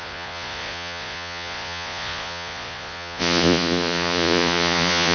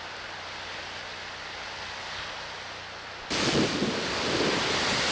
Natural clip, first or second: second